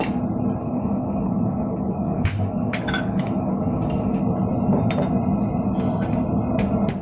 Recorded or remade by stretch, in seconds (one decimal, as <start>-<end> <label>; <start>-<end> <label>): 0.0-0.6 recorded; 0.6-4.2 remade; 4.2-7.0 recorded